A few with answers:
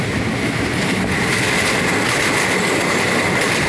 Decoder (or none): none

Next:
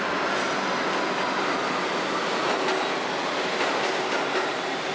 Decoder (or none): none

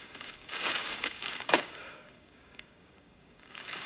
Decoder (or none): codec, DAC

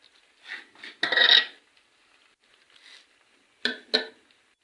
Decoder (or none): none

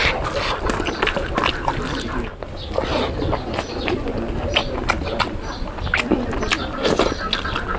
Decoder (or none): none